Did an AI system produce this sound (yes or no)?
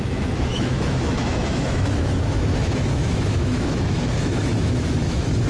yes